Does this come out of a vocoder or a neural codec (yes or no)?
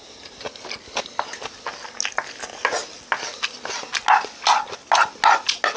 no